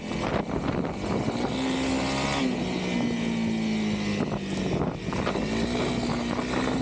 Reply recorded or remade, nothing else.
recorded